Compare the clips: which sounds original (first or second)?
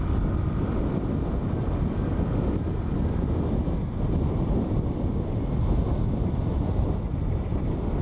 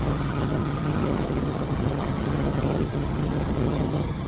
first